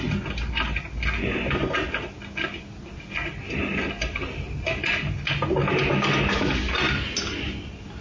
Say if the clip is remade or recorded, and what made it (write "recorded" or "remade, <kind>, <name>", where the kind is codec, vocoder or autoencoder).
recorded